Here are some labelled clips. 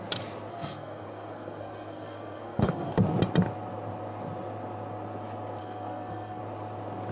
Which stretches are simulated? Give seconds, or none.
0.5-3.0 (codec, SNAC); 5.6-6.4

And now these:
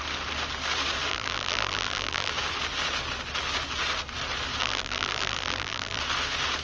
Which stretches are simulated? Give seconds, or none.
1.1-2.3 (vocoder, BigVGAN v2); 4.6-6.0

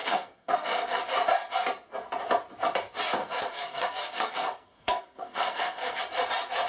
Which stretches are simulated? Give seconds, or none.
0.0-1.0 (codec, SNAC); 3.2-6.0